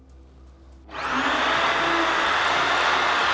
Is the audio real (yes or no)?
yes